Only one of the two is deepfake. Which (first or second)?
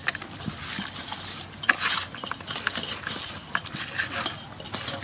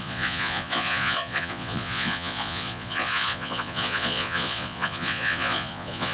second